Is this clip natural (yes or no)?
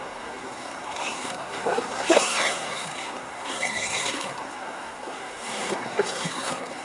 no